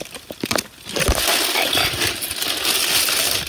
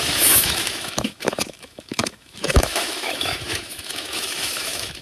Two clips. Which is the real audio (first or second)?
first